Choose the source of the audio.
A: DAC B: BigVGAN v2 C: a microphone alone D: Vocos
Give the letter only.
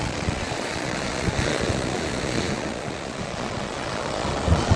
D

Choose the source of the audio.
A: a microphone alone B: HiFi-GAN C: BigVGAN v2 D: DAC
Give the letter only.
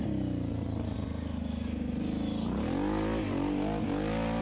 A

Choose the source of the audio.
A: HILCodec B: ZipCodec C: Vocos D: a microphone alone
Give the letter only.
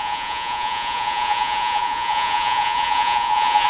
C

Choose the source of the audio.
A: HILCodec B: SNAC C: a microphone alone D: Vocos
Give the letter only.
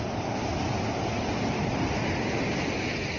C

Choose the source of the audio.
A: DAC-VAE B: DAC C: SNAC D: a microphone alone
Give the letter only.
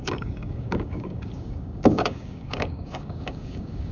B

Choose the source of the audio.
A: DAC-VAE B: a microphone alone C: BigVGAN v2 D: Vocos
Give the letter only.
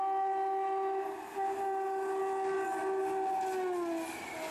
B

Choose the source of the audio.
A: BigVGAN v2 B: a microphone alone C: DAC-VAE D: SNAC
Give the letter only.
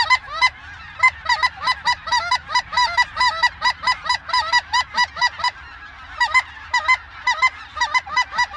A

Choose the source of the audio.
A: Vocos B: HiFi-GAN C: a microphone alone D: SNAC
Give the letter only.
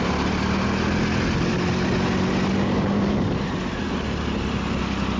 C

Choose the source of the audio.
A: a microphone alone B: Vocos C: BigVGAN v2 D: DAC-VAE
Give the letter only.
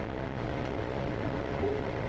B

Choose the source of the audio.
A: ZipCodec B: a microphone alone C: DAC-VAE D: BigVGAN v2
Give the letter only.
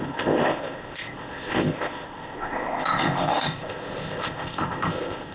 A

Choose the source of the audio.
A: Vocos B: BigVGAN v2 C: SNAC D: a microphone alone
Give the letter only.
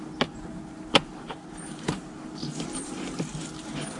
B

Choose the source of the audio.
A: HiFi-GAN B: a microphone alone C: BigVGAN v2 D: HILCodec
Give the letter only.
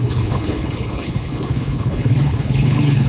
D